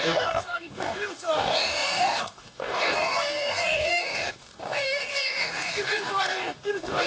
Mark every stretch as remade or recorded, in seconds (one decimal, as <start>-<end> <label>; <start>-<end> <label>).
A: 0.0-7.1 remade